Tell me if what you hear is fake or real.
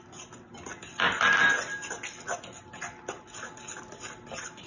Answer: real